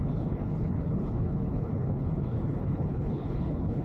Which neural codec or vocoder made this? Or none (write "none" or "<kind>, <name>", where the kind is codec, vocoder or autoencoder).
codec, HILCodec